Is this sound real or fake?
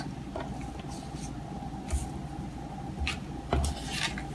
real